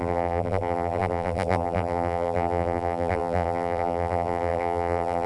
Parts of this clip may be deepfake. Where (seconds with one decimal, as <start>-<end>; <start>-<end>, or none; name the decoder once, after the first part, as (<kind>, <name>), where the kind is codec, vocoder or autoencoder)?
0.0-5.3 (vocoder, BigVGAN v2)